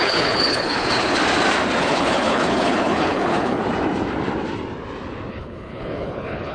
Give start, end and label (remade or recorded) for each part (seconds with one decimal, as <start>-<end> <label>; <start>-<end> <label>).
0.0-1.2 remade; 1.2-1.8 recorded; 1.8-3.6 remade; 3.6-5.3 recorded; 5.3-6.5 remade